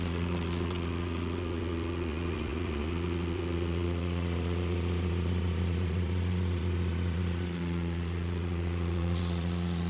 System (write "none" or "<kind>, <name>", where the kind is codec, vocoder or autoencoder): vocoder, Vocos